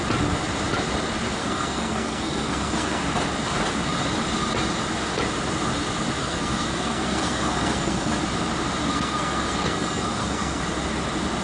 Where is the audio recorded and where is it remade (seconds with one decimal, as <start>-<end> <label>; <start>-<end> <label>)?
0.0-1.4 recorded; 1.4-3.0 remade; 3.0-6.2 recorded; 6.2-8.2 remade; 8.2-8.9 recorded; 8.9-10.6 remade; 10.6-11.4 recorded